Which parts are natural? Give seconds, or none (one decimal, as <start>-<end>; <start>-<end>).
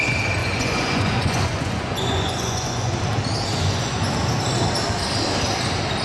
0.0-0.4; 2.9-3.5; 4.1-6.0